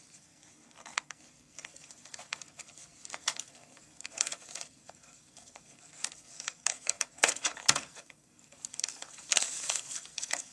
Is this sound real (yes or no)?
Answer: no